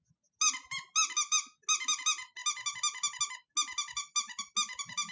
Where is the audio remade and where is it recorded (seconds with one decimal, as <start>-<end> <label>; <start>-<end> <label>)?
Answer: 0.0-5.1 recorded